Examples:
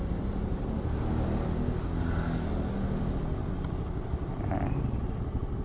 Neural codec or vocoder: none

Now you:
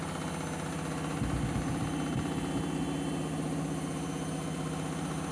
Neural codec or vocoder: none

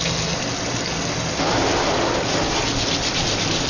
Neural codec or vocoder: none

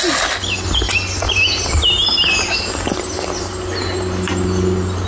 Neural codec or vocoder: none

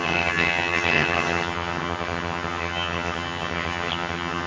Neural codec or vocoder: vocoder, HiFi-GAN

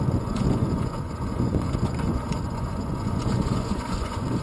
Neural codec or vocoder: vocoder, Vocos